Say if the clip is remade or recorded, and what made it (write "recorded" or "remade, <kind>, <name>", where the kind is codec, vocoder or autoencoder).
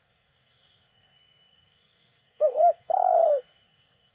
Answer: remade, codec, SNAC